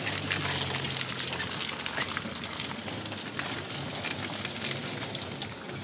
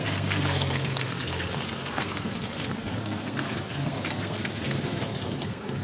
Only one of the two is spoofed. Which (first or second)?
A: second